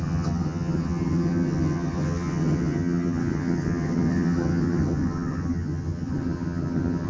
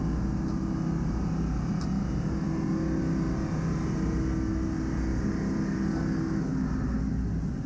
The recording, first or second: second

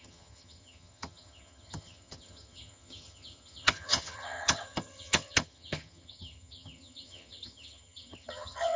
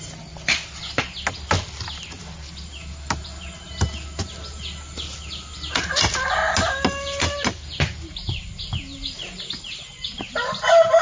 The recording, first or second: second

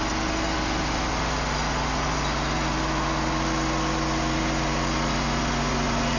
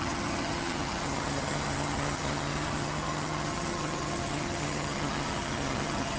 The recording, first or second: first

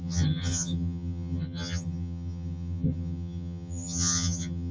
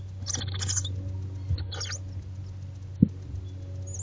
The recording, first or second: second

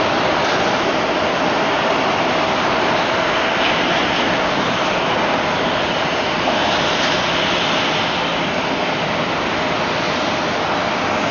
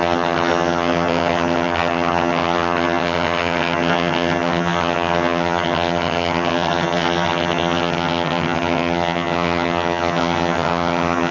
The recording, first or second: first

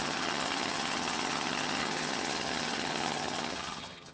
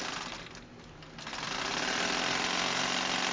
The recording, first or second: second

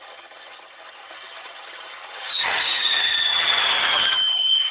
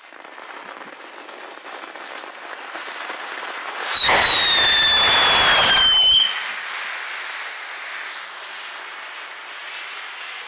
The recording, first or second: second